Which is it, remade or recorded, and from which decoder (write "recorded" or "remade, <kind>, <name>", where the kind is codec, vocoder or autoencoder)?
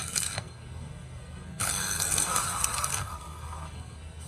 remade, codec, SNAC